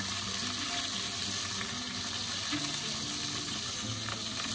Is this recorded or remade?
recorded